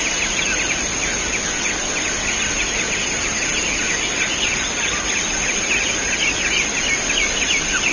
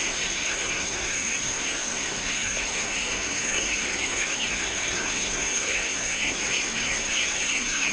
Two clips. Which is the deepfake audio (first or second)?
second